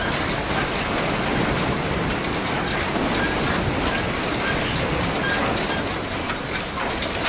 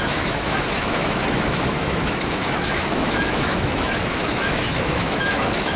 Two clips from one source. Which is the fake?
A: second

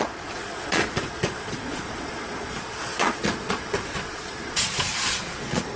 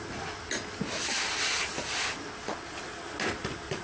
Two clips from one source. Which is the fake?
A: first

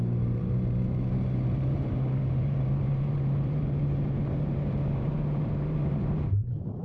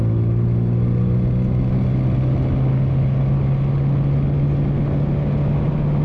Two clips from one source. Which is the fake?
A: first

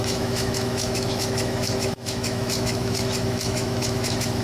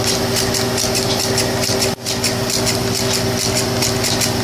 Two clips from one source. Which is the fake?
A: first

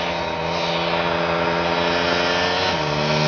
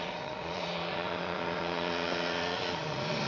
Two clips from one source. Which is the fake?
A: second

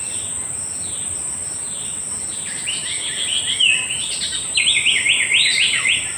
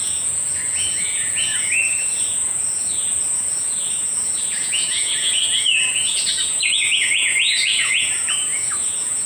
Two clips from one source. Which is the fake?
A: second